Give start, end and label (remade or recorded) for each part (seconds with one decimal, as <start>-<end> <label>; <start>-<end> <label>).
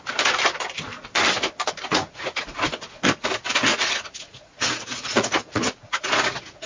0.0-1.9 recorded; 1.9-2.6 remade; 2.6-3.7 recorded; 3.7-6.7 remade